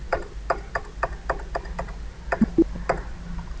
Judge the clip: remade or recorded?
recorded